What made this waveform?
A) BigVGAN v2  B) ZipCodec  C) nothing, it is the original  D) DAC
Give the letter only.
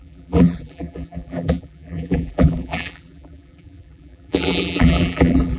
A